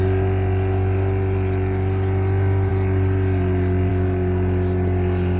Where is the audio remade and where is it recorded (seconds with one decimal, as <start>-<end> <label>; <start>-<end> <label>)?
0.0-5.4 recorded